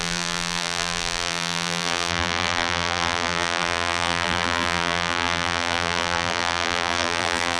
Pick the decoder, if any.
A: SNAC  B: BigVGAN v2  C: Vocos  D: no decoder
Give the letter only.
B